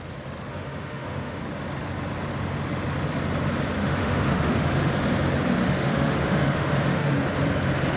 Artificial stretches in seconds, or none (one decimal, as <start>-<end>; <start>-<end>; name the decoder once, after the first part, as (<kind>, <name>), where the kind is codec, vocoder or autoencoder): 0.5-1.4 (autoencoder, DAC-VAE); 3.8-4.9; 5.6-7.1